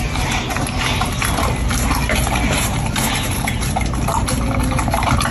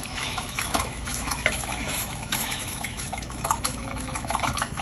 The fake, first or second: second